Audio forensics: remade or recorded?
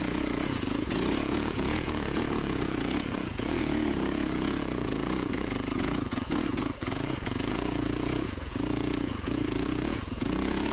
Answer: remade